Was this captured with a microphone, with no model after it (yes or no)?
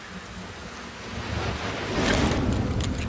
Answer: yes